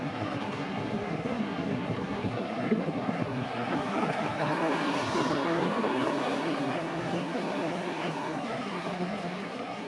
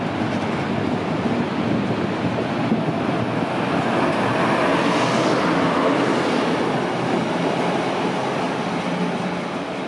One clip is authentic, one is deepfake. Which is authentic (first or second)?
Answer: second